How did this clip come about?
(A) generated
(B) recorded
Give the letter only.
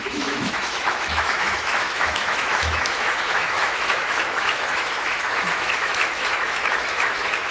A